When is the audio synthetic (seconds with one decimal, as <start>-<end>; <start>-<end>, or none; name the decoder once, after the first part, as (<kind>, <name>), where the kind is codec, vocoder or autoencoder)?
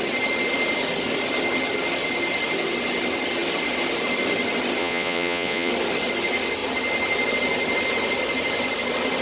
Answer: 4.8-5.7 (vocoder, Vocos)